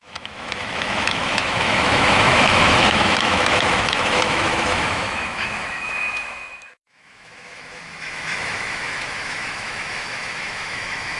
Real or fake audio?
fake